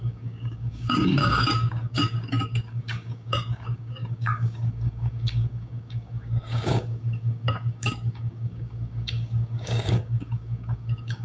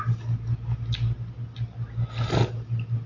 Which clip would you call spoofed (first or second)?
first